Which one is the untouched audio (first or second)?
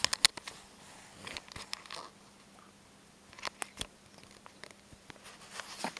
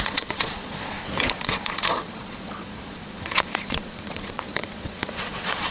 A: first